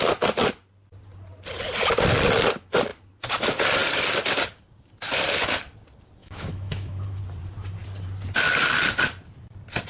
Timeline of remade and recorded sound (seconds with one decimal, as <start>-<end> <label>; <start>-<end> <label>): 0.0-6.2 recorded; 6.2-7.2 remade; 7.2-9.9 recorded